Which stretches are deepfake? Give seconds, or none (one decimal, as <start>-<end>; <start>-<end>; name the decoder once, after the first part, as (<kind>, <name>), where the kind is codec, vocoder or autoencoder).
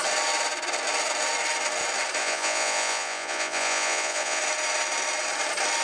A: 2.2-4.4 (vocoder, Vocos)